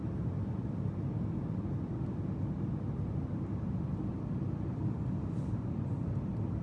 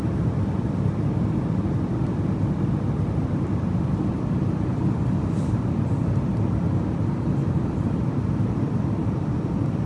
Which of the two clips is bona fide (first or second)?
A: first